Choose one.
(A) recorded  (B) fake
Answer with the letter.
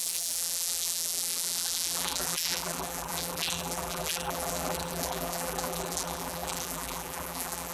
B